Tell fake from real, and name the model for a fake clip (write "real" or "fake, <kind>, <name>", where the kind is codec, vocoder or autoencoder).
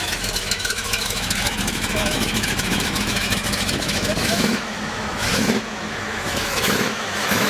fake, autoencoder, DAC-VAE